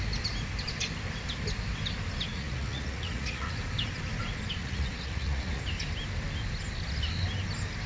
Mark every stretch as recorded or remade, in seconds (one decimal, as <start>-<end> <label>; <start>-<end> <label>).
0.0-2.3 recorded; 2.3-3.5 remade; 3.5-4.6 recorded; 4.6-5.6 remade; 5.6-7.9 recorded